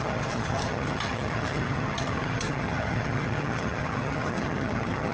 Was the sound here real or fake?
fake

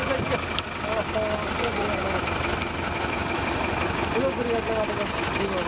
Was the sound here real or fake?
real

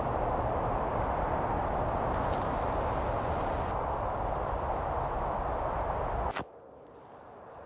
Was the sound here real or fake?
real